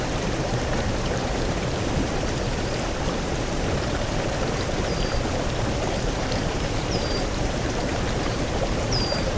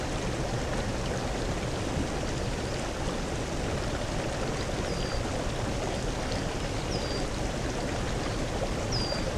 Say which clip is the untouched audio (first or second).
second